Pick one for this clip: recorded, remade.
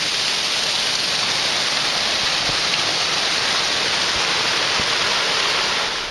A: recorded